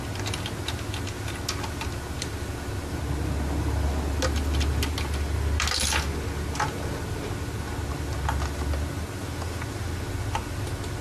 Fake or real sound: real